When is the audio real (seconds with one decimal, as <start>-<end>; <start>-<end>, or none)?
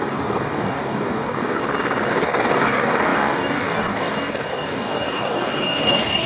1.6-2.1